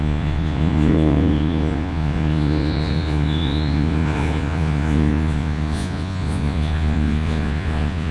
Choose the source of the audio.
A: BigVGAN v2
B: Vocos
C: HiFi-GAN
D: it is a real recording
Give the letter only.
B